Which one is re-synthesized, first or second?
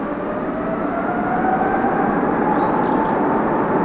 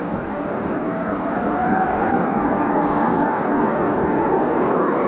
second